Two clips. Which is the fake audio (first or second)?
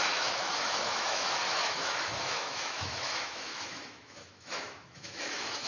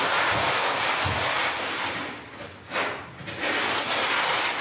first